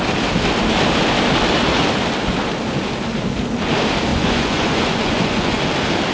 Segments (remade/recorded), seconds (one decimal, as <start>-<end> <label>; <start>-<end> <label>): 0.0-4.1 recorded; 4.1-5.6 remade; 5.6-6.1 recorded